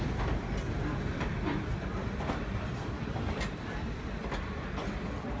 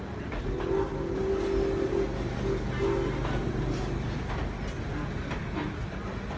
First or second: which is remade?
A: first